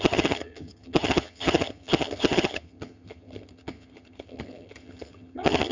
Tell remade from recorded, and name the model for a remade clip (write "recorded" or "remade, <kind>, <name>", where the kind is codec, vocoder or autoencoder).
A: remade, vocoder, HiFi-GAN